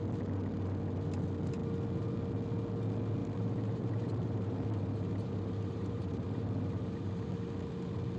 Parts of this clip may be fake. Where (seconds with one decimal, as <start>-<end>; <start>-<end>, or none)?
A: 3.2-7.3